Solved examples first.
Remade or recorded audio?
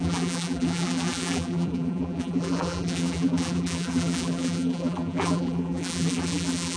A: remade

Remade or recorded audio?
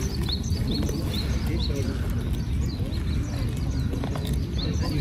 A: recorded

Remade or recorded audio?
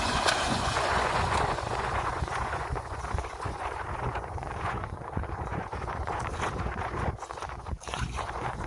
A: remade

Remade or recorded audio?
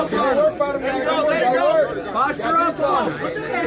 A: recorded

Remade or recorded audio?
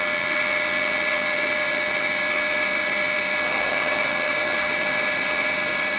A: remade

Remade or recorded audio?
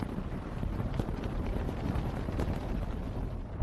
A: recorded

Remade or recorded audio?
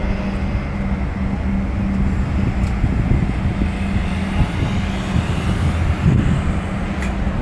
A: recorded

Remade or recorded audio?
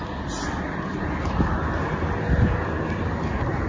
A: recorded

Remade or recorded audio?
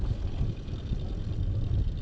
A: recorded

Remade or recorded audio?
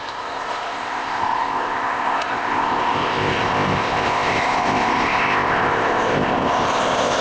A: remade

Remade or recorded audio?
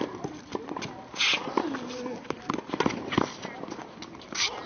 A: recorded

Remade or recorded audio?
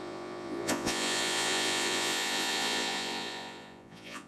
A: remade